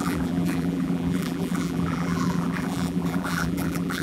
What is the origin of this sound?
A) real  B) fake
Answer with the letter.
B